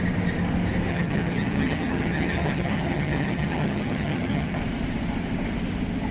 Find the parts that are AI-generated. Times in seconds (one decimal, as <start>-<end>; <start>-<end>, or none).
0.9-4.6